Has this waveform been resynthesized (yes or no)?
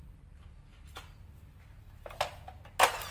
no